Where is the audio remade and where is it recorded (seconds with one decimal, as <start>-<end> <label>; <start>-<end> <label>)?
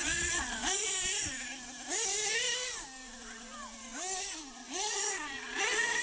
0.0-0.9 remade; 0.9-4.6 recorded; 4.6-6.0 remade